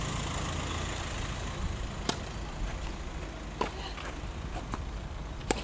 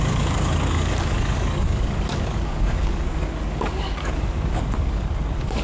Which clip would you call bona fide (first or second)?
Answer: first